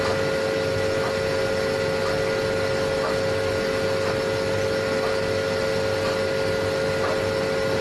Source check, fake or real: real